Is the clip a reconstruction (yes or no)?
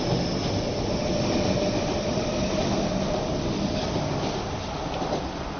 no